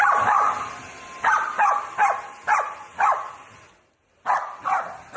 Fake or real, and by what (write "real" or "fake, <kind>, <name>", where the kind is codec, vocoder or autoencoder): real